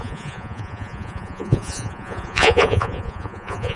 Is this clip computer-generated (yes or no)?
yes